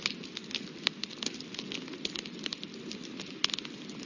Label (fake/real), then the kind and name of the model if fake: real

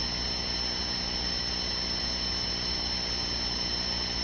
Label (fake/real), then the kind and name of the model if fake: real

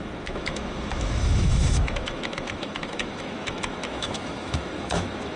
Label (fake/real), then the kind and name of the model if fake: fake, autoencoder, DAC-VAE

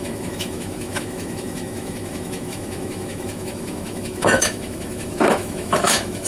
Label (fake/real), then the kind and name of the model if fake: fake, autoencoder, DAC-VAE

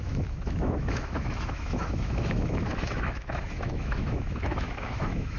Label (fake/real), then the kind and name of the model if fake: fake, autoencoder, DAC-VAE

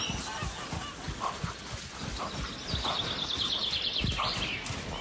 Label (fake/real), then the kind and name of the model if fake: real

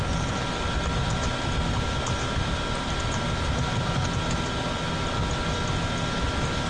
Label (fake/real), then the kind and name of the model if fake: real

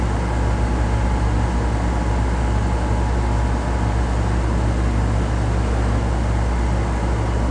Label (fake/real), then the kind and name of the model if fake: real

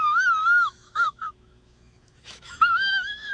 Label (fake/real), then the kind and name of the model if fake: fake, autoencoder, DAC-VAE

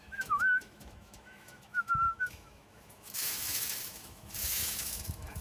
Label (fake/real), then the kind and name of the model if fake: fake, autoencoder, DAC-VAE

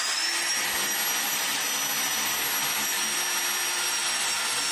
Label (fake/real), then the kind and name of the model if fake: real